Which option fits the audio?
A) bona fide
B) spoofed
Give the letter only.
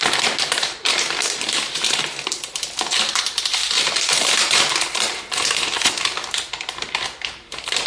B